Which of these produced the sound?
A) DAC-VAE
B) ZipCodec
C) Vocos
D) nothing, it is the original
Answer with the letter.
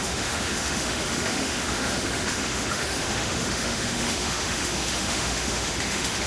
A